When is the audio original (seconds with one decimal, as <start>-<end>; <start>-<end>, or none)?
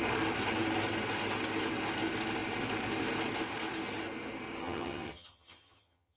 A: 0.0-4.6